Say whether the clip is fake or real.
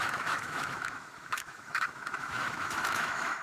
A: fake